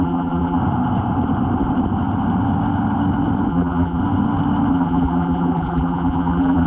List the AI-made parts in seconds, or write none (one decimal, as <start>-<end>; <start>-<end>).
0.0-0.6; 3.5-4.0; 4.7-6.7